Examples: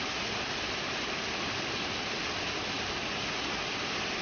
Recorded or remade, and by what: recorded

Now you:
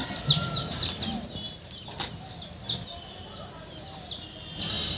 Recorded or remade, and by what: recorded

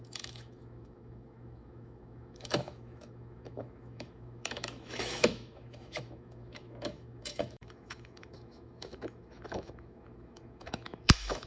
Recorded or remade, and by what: remade, autoencoder, DAC-VAE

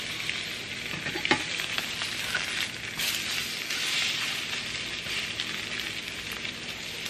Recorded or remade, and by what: recorded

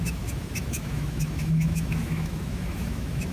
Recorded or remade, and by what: remade, autoencoder, DAC-VAE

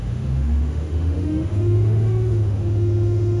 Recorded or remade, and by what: remade, autoencoder, DAC-VAE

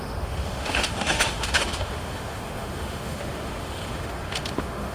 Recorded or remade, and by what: remade, autoencoder, DAC-VAE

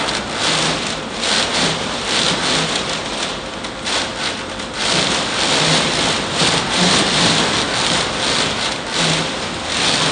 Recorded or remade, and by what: recorded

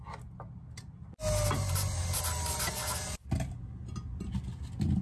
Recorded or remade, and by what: recorded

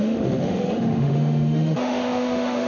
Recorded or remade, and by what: remade, autoencoder, DAC-VAE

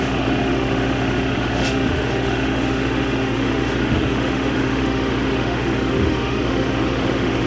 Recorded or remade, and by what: remade, autoencoder, DAC-VAE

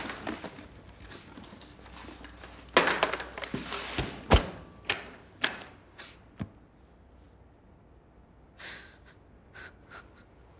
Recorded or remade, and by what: recorded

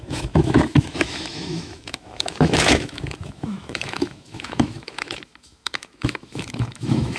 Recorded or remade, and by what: remade, autoencoder, DAC-VAE